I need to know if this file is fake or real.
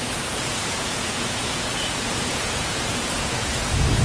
fake